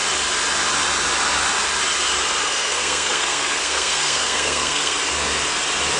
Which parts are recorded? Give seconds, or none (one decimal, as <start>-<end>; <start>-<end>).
0.0-2.4; 5.0-6.0